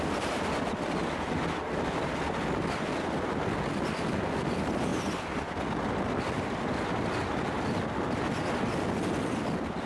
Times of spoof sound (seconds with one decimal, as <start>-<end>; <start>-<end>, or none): none